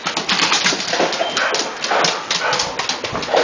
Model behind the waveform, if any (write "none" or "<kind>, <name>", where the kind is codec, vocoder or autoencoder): none